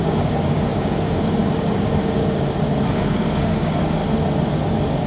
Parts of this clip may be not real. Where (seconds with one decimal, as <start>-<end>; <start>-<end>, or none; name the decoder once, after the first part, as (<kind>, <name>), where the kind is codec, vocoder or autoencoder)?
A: 0.0-2.2 (codec, DAC); 2.9-4.0; 4.5-5.1